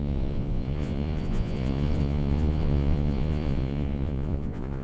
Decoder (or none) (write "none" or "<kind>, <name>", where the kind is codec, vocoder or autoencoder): vocoder, Vocos